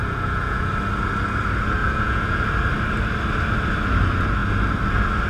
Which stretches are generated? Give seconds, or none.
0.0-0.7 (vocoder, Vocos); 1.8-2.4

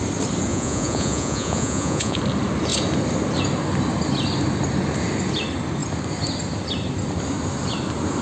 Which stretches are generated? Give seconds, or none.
0.5-2.2 (vocoder, Vocos)

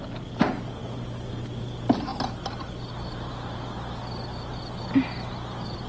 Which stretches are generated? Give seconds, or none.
none

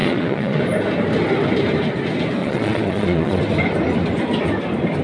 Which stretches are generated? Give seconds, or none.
0.0-0.6 (vocoder, Vocos); 2.4-3.4

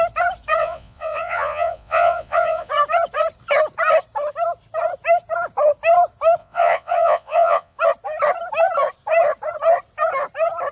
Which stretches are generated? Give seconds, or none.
0.6-2.7 (vocoder, Vocos); 6.4-7.8

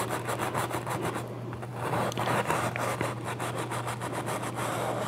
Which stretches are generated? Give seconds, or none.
none